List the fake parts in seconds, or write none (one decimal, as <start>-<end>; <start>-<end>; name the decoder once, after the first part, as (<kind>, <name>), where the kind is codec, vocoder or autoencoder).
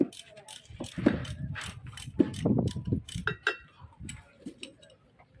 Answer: none